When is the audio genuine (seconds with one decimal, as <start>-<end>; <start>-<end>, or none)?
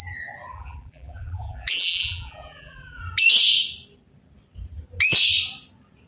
0.0-0.5; 3.0-6.1